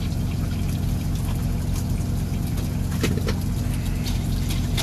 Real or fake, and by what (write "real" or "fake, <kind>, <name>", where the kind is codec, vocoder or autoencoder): real